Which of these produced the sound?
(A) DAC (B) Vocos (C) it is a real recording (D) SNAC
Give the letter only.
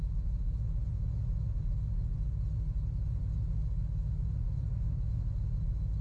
C